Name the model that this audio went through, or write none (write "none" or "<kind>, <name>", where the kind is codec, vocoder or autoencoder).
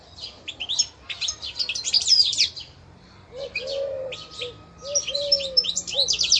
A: vocoder, BigVGAN v2